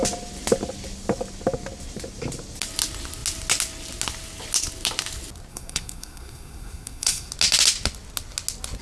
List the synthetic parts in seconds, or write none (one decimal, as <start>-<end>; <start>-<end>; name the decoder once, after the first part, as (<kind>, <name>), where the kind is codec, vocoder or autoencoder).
5.5-7.3 (codec, SNAC)